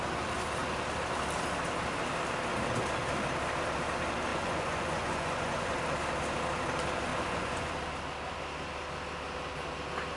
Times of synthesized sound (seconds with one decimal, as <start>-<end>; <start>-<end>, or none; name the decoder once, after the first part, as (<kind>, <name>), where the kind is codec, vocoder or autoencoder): 4.3-5.7 (vocoder, Vocos); 7.1-7.7